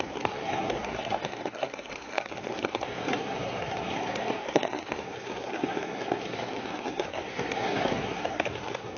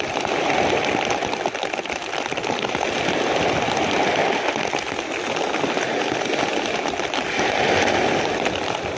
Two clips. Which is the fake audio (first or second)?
first